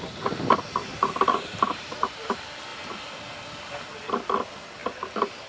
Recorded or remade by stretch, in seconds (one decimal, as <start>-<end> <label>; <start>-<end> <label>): 0.0-0.9 recorded; 0.9-2.3 remade; 2.3-4.8 recorded; 4.8-5.5 remade